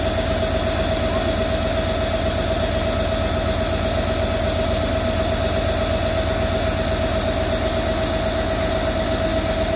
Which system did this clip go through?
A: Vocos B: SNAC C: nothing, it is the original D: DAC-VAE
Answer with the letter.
C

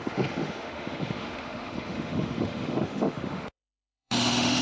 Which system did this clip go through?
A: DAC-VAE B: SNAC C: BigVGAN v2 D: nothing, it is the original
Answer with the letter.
A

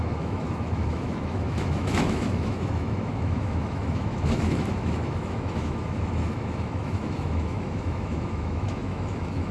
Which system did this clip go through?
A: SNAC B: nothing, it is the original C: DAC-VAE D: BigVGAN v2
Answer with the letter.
C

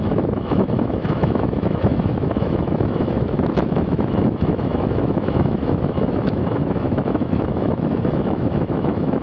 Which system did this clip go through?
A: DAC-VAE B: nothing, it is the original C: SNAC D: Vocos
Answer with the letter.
A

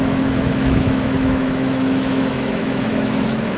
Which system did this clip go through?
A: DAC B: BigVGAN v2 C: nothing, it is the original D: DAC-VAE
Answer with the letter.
D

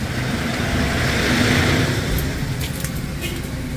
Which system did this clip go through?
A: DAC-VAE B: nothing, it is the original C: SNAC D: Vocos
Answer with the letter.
B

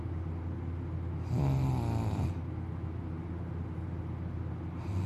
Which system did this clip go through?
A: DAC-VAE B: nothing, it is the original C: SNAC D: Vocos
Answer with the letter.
B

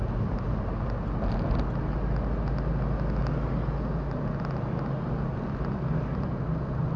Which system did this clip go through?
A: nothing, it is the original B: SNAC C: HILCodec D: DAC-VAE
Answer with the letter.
A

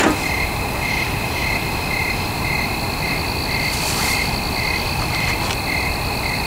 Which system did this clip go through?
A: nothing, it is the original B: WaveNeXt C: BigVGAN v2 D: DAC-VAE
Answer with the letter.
A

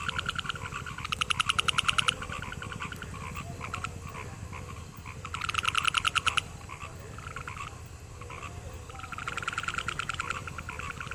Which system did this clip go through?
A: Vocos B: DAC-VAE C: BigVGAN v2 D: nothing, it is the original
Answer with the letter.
D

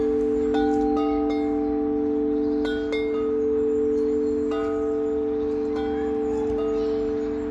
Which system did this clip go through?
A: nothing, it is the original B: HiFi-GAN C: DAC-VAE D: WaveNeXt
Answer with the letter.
A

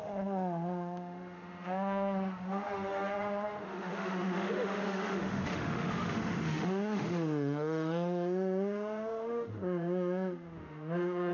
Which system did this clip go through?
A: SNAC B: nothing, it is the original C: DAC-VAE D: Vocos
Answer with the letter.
C